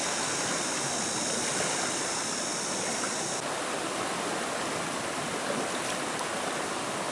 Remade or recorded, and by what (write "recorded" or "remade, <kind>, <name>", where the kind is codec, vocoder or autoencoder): recorded